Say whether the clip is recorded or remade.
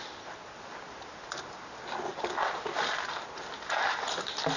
recorded